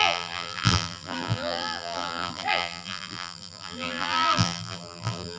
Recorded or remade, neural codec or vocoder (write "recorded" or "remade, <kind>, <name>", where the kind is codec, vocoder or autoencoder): remade, vocoder, BigVGAN v2